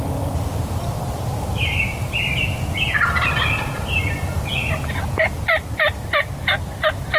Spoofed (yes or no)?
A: no